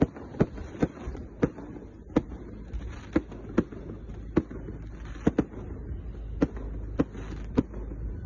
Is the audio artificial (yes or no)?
no